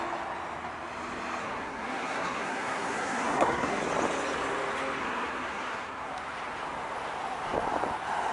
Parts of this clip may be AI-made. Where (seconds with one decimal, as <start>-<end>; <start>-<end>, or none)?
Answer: 1.4-3.8; 5.0-6.1